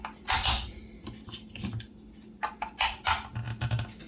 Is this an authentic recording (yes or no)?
yes